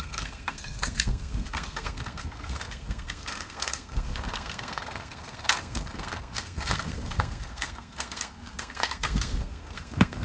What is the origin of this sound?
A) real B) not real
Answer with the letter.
B